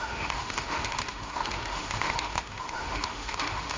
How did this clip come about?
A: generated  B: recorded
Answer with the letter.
A